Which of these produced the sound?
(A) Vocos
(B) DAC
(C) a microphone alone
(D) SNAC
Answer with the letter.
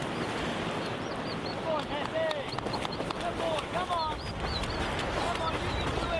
C